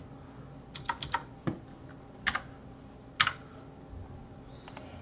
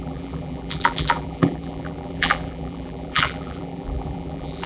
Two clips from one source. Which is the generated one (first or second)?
second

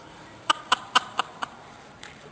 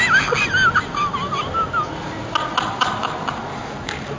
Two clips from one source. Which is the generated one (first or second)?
first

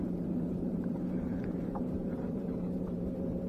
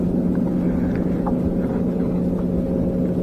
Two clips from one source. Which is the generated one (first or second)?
first